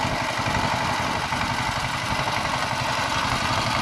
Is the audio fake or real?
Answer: real